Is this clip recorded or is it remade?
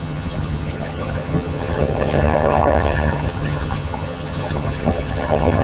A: remade